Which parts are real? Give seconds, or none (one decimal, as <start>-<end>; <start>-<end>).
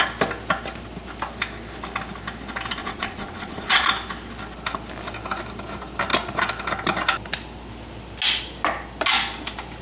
0.0-2.8; 3.9-9.8